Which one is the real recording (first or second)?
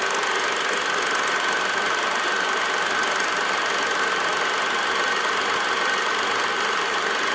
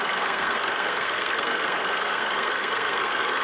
first